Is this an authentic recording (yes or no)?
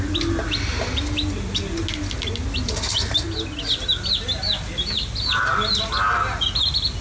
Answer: yes